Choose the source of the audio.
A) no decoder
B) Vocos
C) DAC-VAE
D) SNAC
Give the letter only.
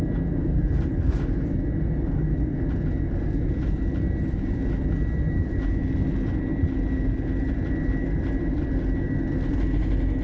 A